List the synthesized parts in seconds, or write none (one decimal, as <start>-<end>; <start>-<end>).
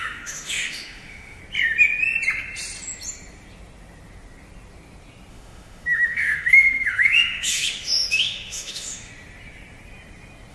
0.0-1.4; 5.3-9.1